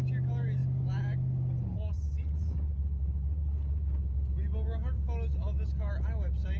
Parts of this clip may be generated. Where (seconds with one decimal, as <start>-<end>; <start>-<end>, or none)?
none